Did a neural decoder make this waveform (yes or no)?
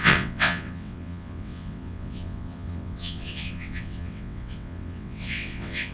yes